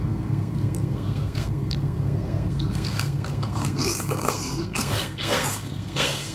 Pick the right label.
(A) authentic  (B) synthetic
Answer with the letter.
B